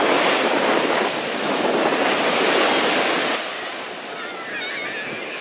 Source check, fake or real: real